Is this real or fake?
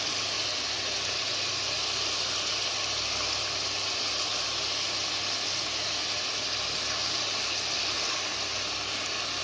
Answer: real